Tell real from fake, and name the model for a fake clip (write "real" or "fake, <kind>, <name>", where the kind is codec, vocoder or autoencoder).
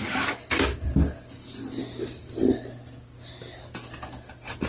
real